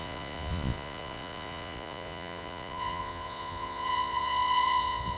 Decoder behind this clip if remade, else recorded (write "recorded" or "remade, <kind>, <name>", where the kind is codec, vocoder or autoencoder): remade, vocoder, Vocos